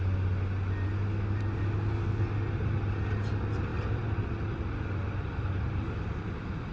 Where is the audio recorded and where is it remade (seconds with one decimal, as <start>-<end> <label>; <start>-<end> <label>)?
0.0-6.7 recorded